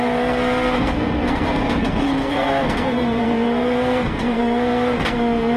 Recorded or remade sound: remade